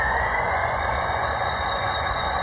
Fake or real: fake